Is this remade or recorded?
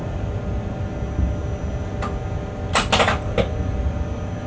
recorded